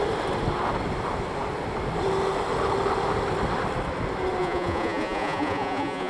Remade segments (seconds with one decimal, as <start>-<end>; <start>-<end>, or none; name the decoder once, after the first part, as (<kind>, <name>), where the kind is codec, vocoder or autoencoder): 4.4-6.1 (vocoder, Vocos)